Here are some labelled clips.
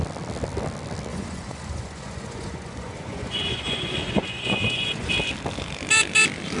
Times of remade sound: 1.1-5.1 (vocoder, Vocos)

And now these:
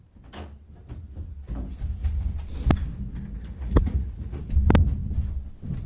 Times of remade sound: 3.4-4.4 (vocoder, Vocos)

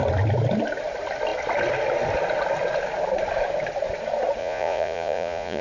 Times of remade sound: 4.4-5.6 (vocoder, Vocos)

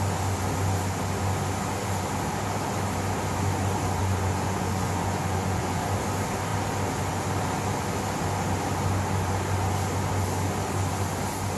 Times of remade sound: 4.0-5.8 (vocoder, Vocos)